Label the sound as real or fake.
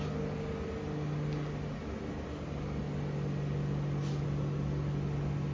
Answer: real